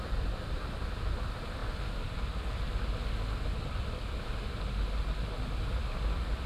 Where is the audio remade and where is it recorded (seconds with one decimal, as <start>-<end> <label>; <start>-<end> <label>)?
0.0-1.6 remade; 1.6-5.1 recorded; 5.1-6.5 remade

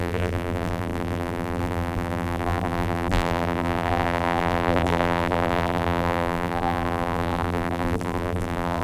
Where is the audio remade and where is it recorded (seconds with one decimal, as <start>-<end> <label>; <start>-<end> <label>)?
0.0-8.8 remade

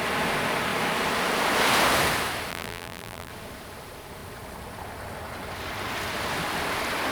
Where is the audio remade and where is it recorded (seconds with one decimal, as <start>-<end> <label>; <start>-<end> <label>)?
0.0-2.5 recorded; 2.5-3.3 remade; 3.3-7.1 recorded